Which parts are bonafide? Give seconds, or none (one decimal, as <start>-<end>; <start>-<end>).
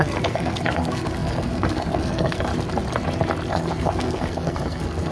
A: 2.5-3.5